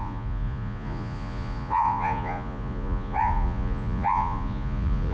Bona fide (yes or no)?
no